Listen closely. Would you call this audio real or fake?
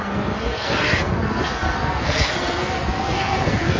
fake